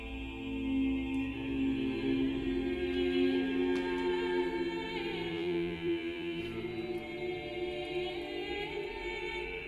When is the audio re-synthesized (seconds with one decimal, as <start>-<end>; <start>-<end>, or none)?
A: 5.3-6.4